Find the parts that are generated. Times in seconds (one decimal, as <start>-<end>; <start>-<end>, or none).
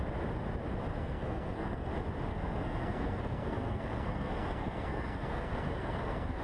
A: 0.9-1.9; 2.3-6.4